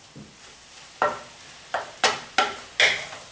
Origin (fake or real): real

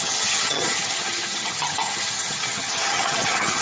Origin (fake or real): fake